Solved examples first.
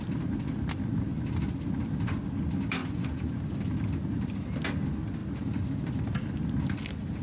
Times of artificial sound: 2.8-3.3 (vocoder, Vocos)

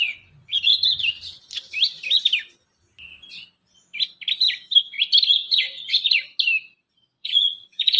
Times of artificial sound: 0.0-0.7 (vocoder, Vocos); 5.3-6.2; 7.0-8.0

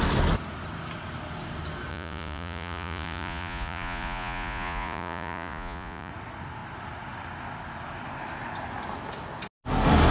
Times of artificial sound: 1.9-6.1 (vocoder, Vocos)

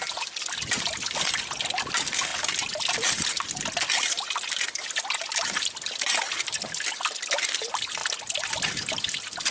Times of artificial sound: none

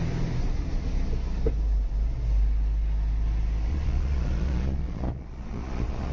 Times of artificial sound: 3.7-6.1 (vocoder, Vocos)